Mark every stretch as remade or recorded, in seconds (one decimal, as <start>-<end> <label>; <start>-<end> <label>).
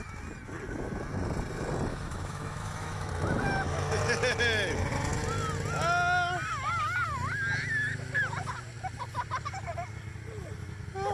0.0-1.9 recorded; 1.9-3.1 remade; 3.1-11.1 recorded